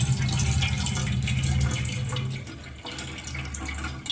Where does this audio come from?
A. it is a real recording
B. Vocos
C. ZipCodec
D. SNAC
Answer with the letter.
A